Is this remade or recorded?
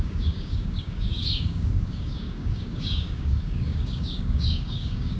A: remade